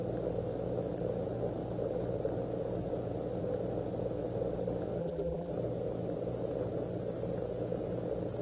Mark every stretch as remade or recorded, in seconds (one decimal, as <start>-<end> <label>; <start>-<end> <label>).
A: 0.0-5.0 recorded; 5.0-5.5 remade; 5.5-8.4 recorded